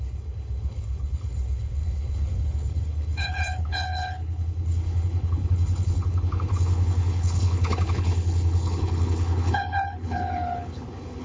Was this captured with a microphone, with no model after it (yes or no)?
no